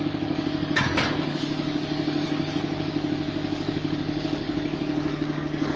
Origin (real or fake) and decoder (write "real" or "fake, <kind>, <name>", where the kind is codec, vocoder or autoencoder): fake, codec, DAC